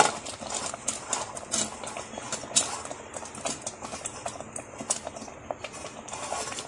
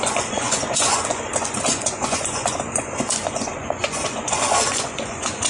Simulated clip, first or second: second